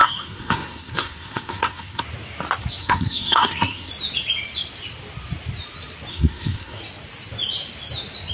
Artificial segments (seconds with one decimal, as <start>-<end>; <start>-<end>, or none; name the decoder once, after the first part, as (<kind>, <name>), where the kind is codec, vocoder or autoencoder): 0.0-2.0 (codec, SNAC); 2.8-3.9; 6.1-6.8